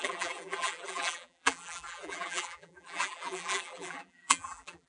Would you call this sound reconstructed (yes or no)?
yes